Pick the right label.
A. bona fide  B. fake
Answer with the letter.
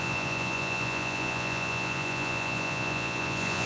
B